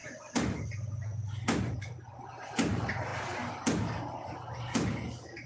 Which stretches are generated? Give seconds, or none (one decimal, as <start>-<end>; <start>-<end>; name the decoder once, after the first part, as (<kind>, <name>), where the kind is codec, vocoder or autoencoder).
none